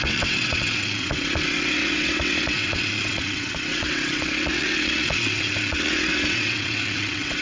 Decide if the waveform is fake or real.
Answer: fake